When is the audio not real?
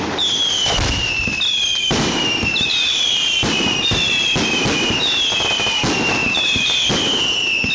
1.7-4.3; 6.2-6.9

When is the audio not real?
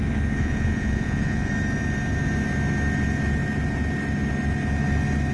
0.4-1.5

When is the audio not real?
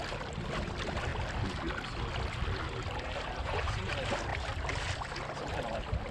3.4-3.9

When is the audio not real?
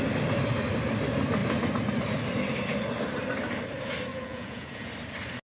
4.1-4.9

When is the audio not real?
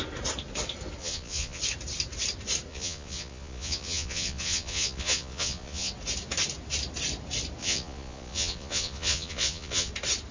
1.0-1.6; 2.7-5.9; 7.6-9.9